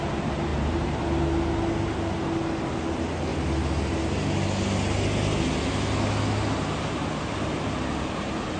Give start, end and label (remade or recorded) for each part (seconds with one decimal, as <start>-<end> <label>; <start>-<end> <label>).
0.0-0.5 recorded; 0.5-1.0 remade; 1.0-8.6 recorded